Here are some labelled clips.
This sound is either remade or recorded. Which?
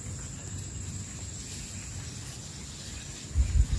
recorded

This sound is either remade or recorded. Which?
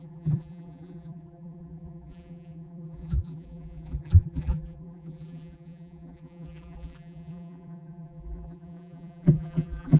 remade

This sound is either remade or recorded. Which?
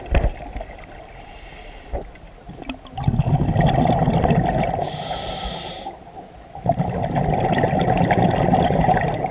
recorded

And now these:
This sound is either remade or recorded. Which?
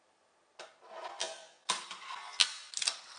recorded